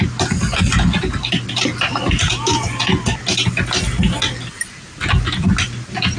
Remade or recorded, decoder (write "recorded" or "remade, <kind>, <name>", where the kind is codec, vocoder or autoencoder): recorded